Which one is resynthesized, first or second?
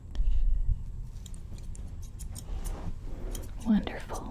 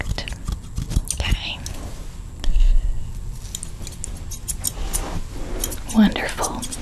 first